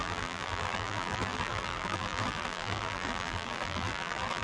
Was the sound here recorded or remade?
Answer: remade